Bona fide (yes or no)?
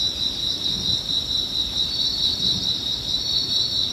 no